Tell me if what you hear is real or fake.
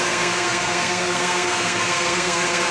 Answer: fake